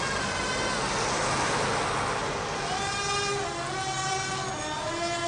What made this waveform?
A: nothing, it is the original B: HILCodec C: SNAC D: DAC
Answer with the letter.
A